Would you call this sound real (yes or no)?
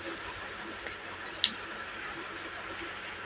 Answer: yes